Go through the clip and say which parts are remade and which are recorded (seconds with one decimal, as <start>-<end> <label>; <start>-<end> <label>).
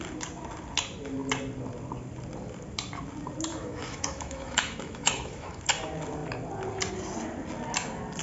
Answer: 0.0-3.5 recorded; 3.5-5.6 remade; 5.6-8.2 recorded